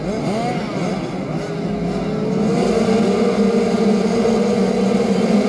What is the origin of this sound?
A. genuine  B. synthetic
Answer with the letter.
A